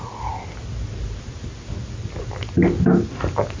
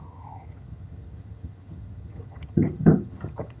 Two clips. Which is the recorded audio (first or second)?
first